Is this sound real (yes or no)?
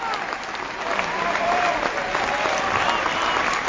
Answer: no